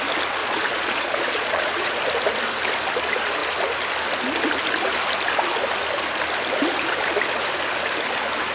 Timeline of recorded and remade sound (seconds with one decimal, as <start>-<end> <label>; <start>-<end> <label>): 0.0-0.4 recorded; 0.4-2.0 remade; 2.0-8.5 recorded